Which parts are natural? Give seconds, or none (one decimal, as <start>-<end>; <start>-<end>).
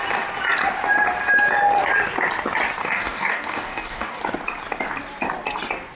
0.0-2.8; 4.2-5.9